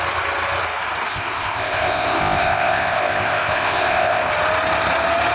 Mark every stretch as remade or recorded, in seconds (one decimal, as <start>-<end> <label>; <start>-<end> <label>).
0.0-1.1 recorded; 1.1-4.3 remade; 4.3-5.3 recorded